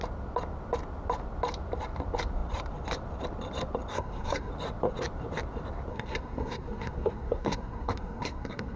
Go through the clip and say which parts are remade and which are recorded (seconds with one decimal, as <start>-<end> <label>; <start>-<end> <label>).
0.0-3.9 recorded; 3.9-4.5 remade; 4.5-5.9 recorded; 5.9-8.8 remade